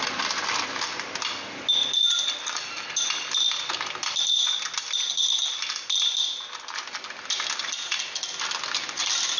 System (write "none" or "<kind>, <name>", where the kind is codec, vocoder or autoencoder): none